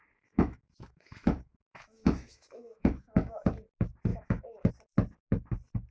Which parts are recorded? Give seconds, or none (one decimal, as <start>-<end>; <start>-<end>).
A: 3.5-4.1; 4.7-5.9